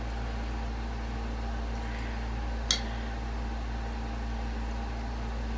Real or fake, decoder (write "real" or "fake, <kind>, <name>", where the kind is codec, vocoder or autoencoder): real